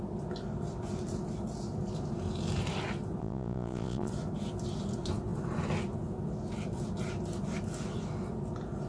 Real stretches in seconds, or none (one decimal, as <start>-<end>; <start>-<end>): 0.0-3.2; 4.1-8.9